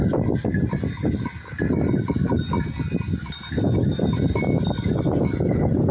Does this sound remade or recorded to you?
recorded